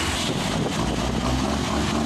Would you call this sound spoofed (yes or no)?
no